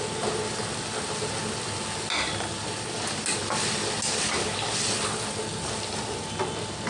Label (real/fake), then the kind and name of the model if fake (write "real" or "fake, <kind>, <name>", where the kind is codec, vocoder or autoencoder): real